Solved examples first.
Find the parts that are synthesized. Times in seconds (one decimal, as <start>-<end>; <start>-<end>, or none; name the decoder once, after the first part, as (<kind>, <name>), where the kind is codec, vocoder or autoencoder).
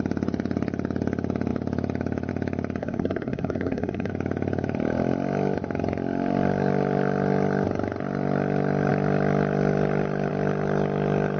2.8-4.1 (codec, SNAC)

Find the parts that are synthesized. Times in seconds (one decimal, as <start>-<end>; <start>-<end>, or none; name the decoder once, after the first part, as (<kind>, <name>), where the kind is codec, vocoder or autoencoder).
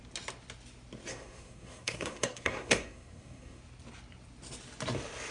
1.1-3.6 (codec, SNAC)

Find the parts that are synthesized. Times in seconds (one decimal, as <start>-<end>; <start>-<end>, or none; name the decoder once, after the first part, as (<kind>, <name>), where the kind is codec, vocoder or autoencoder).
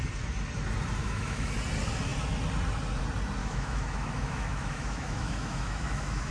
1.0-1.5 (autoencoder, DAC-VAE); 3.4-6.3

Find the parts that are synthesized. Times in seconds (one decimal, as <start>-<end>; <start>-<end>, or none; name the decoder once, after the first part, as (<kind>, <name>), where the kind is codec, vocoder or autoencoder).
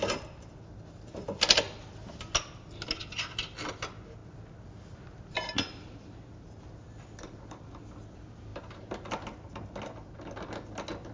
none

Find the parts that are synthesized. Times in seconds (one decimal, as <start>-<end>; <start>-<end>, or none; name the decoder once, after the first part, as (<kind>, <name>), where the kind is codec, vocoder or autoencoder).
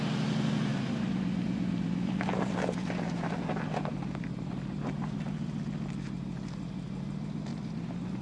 0.7-5.6 (vocoder, BigVGAN v2); 7.5-8.2